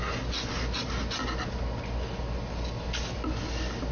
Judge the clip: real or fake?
real